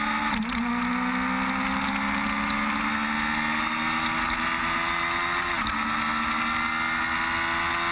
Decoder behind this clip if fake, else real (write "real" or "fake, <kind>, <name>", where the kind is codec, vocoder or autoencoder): real